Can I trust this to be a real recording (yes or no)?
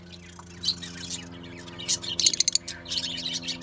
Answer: yes